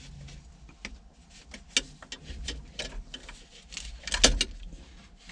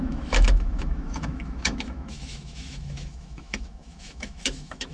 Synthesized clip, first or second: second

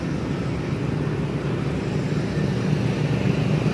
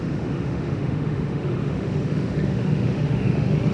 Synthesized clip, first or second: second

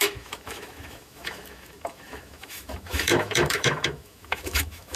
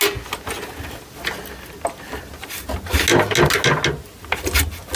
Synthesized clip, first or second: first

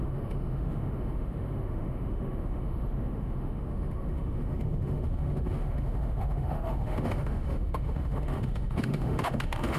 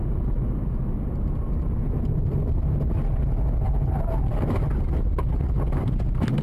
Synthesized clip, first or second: first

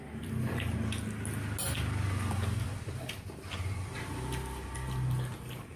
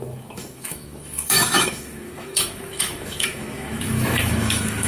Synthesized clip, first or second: second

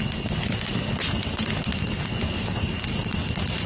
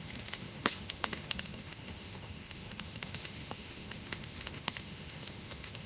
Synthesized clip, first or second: second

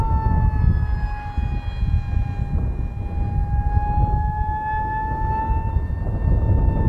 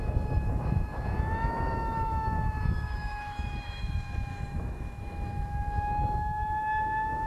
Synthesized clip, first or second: second